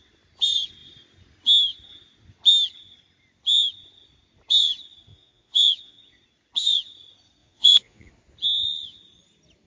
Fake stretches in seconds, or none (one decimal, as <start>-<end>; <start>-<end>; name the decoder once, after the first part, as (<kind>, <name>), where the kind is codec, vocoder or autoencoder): 5.1-6.1 (vocoder, Vocos); 7.4-8.1